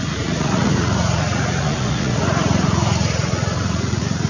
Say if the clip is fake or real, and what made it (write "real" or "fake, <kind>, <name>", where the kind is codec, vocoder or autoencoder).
fake, vocoder, Vocos